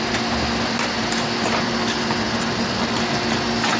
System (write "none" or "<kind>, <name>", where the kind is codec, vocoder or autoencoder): none